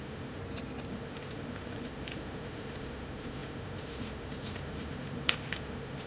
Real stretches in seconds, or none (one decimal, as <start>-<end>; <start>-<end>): 0.4-0.9